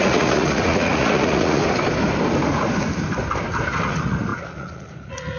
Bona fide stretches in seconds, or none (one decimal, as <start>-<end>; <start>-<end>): 1.6-3.8